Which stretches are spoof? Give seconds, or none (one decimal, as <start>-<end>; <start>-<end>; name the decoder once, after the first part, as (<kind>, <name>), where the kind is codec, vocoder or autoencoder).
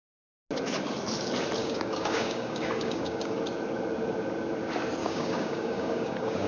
1.6-3.4 (codec, DAC); 5.0-6.5